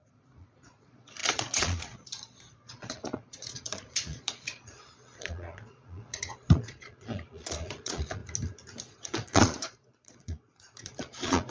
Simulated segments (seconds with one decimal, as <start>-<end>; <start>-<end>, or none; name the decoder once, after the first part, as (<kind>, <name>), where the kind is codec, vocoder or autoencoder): 0.0-8.2 (vocoder, Vocos); 8.8-11.5

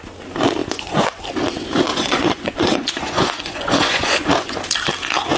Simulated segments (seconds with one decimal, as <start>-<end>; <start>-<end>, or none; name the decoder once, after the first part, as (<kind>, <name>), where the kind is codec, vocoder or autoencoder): 0.6-1.2 (vocoder, Vocos); 1.9-4.6

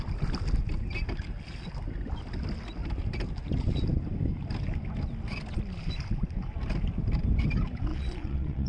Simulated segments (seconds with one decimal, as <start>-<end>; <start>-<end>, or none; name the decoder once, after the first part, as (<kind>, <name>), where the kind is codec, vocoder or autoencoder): 7.9-8.7 (vocoder, Vocos)

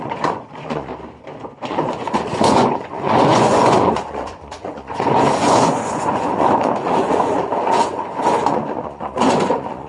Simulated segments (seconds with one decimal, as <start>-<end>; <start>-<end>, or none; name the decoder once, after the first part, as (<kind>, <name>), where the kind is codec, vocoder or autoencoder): 0.0-0.9 (vocoder, Vocos); 1.5-9.9

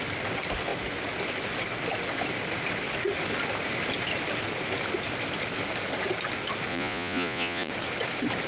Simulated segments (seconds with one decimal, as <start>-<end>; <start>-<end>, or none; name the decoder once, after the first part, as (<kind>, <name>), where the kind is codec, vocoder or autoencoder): 6.7-7.7 (vocoder, Vocos)